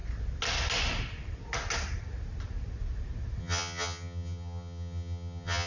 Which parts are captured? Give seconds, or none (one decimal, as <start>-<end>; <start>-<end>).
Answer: 0.0-3.4